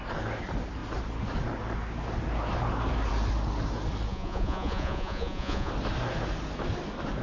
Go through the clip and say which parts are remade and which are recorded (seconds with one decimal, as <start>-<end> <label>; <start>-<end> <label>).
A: 0.0-4.1 recorded; 4.1-5.7 remade; 5.7-7.2 recorded

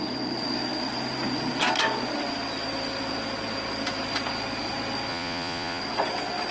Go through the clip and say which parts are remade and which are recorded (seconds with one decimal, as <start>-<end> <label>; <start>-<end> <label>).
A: 0.0-5.1 recorded; 5.1-5.8 remade; 5.8-6.5 recorded

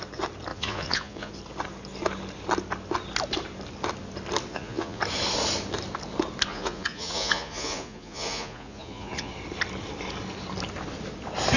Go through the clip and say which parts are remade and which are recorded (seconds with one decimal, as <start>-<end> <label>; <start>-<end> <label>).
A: 0.0-0.5 recorded; 0.5-1.3 remade; 1.3-4.5 recorded; 4.5-5.0 remade; 5.0-6.5 recorded; 6.5-9.3 remade; 9.3-11.6 recorded

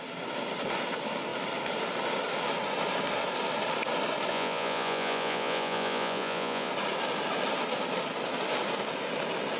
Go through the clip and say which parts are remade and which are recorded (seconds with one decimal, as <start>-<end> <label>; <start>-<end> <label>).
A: 0.0-4.3 recorded; 4.3-6.7 remade; 6.7-9.6 recorded